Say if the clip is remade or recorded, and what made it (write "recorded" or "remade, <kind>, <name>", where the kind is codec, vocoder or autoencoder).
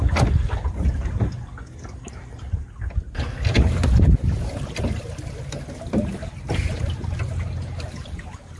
recorded